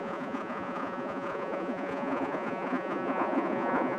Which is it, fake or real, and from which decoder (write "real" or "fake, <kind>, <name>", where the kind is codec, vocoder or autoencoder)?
fake, vocoder, Vocos